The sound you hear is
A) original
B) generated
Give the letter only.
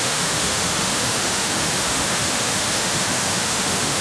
B